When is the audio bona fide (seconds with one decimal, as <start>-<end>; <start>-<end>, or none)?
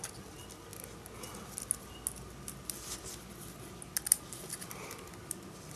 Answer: 0.0-5.8